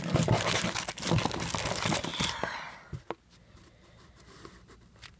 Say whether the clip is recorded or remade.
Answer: recorded